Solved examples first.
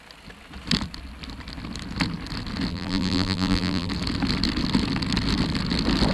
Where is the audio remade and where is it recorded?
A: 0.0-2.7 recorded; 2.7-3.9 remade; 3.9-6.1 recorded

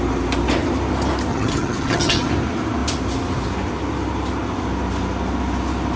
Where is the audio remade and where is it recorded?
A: 0.0-1.3 recorded; 1.3-2.3 remade; 2.3-6.0 recorded

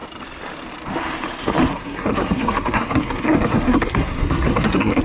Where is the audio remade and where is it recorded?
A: 0.0-1.7 recorded; 1.7-5.0 remade

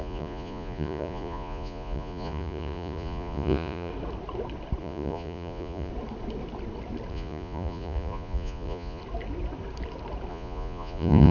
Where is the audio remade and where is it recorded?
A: 0.0-3.9 remade; 3.9-4.8 recorded; 4.8-5.9 remade; 5.9-7.1 recorded; 7.1-9.0 remade; 9.0-10.3 recorded; 10.3-11.3 remade

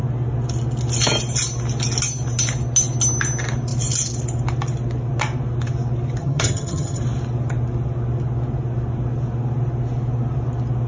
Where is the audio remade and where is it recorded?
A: 0.0-6.2 recorded; 6.2-7.0 remade; 7.0-10.9 recorded

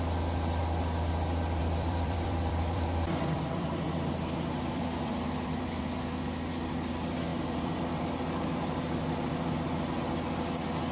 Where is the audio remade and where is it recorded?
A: 0.0-0.6 recorded; 0.6-1.1 remade; 1.1-1.6 recorded; 1.6-5.8 remade; 5.8-7.3 recorded; 7.3-9.0 remade; 9.0-10.9 recorded